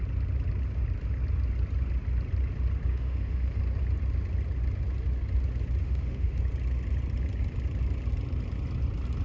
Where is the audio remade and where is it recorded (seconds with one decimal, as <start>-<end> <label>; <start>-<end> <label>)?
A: 0.0-2.9 recorded; 2.9-3.6 remade; 3.6-5.8 recorded; 5.8-6.4 remade; 6.4-9.2 recorded